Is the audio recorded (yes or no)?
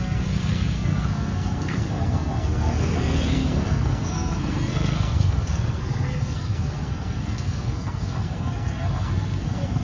no